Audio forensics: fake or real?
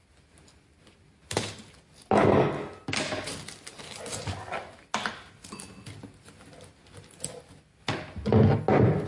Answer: real